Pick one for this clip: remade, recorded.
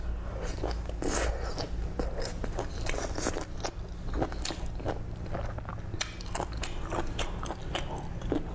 recorded